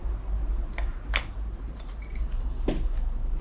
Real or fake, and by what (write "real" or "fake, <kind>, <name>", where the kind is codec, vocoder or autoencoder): real